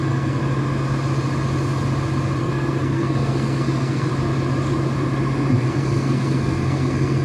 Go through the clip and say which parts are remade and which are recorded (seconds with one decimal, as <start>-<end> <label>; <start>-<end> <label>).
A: 0.0-0.4 remade; 0.4-2.4 recorded; 2.4-4.1 remade; 4.1-5.7 recorded; 5.7-7.2 remade

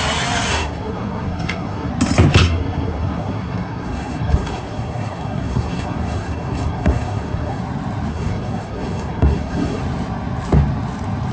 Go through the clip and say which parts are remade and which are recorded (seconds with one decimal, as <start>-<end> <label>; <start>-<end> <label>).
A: 0.0-0.5 recorded; 0.5-1.9 remade; 1.9-2.4 recorded; 2.4-7.6 remade; 7.6-8.1 recorded; 8.1-9.8 remade; 9.8-11.3 recorded

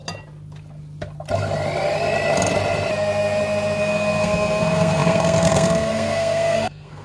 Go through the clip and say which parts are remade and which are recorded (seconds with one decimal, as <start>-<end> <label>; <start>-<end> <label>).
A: 0.0-3.8 recorded; 3.8-7.0 remade

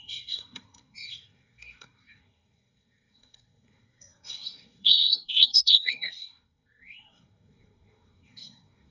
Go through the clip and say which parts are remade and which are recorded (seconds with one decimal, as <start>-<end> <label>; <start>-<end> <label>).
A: 0.0-8.9 remade

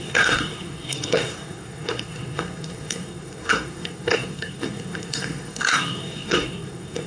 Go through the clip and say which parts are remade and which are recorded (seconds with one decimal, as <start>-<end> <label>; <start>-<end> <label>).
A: 0.0-7.1 remade

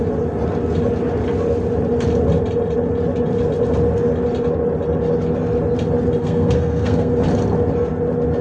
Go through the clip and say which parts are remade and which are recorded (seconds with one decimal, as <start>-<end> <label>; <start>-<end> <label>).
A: 0.0-6.2 recorded; 6.2-7.1 remade; 7.1-8.4 recorded

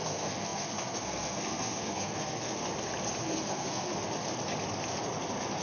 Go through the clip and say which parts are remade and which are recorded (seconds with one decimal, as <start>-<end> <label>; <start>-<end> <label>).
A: 0.0-2.7 remade; 2.7-3.2 recorded; 3.2-3.9 remade; 3.9-5.6 recorded